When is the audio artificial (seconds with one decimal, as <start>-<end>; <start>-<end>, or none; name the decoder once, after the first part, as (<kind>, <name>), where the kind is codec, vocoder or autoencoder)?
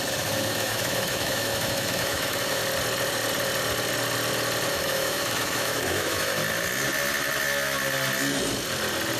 0.0-2.6 (autoencoder, DAC-VAE); 4.7-6.4